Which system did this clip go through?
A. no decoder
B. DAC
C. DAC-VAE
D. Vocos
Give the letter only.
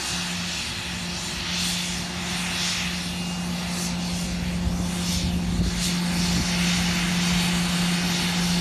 A